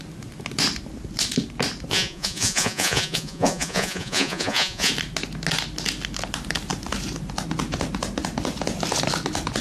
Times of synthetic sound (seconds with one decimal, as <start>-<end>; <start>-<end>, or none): 1.9-4.9